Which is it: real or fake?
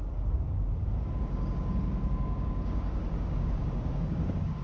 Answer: fake